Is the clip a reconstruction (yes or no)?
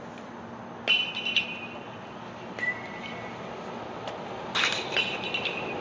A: no